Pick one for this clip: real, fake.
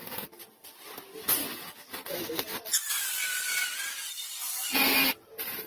real